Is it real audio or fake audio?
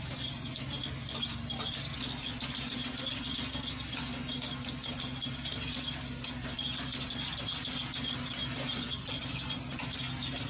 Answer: real